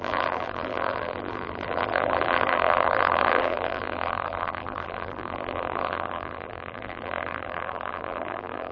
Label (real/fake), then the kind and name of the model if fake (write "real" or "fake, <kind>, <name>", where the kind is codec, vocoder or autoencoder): fake, vocoder, BigVGAN v2